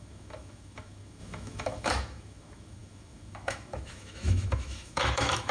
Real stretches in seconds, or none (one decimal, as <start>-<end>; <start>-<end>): none